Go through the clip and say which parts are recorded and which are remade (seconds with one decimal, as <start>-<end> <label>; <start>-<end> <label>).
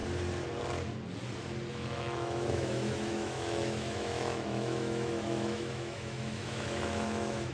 0.0-1.7 recorded; 1.7-7.5 remade